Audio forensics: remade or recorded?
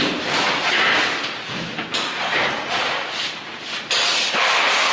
recorded